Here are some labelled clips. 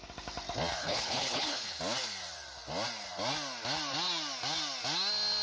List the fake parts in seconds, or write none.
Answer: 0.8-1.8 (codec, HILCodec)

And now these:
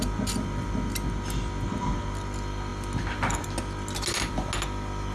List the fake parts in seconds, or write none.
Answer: none